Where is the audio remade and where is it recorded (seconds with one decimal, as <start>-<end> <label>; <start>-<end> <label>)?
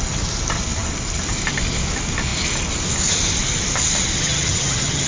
0.0-4.2 recorded; 4.2-5.1 remade